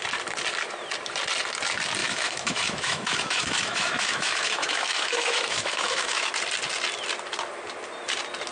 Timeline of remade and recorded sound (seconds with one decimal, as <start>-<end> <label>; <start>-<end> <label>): 0.0-2.0 recorded; 2.0-6.3 remade; 6.3-8.5 recorded